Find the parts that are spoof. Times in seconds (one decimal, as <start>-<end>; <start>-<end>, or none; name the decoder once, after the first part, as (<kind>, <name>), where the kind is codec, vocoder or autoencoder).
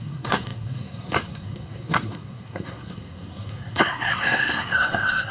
0.0-5.3 (codec, SNAC)